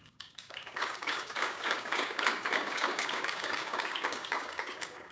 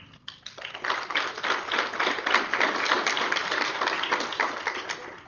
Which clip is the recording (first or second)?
second